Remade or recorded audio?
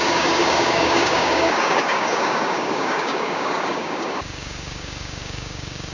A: remade